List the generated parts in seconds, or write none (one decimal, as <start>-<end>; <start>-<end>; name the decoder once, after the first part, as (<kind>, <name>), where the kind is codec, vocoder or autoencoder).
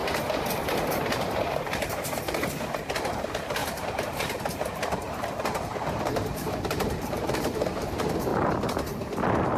3.1-8.3 (vocoder, BigVGAN v2)